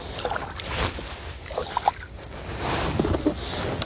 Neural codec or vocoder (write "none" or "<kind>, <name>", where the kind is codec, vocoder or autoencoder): none